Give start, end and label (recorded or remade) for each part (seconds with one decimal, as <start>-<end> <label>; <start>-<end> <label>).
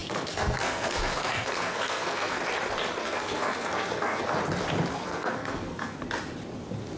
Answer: 0.0-2.4 remade; 2.4-3.0 recorded; 3.0-4.2 remade; 4.2-4.9 recorded; 4.9-6.0 remade; 6.0-7.0 recorded